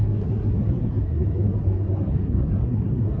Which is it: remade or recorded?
remade